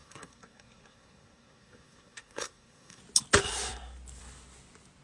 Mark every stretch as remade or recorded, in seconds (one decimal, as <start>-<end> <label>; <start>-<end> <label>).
0.0-3.0 remade; 3.0-5.0 recorded